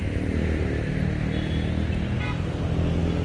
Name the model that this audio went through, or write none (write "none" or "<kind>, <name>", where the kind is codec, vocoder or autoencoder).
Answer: none